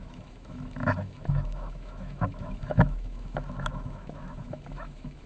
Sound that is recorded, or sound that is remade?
remade